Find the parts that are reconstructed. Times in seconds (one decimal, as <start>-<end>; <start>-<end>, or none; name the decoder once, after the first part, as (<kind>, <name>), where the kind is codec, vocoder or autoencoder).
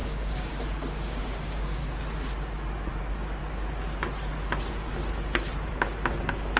0.0-1.8 (codec, DAC); 3.0-3.4; 5.7-6.6